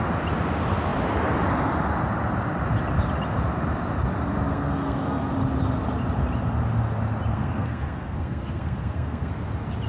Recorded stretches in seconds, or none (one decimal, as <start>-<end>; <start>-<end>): 0.0-4.5; 5.3-7.3; 9.3-9.9